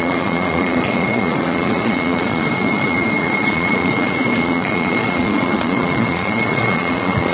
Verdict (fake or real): fake